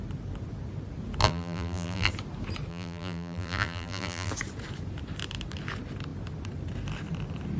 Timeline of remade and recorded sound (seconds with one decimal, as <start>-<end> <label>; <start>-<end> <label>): 0.0-1.2 recorded; 1.2-2.1 remade; 2.1-2.7 recorded; 2.7-4.3 remade; 4.3-7.6 recorded